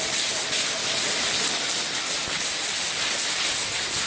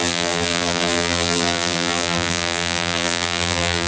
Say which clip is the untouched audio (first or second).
first